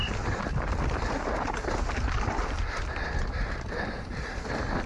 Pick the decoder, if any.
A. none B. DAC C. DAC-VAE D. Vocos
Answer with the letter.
A